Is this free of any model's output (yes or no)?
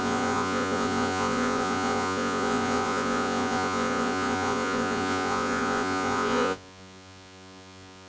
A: no